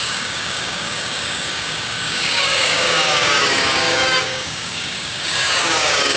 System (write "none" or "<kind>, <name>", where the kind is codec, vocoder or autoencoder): codec, DAC